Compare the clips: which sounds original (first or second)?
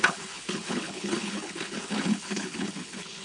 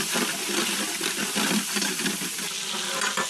second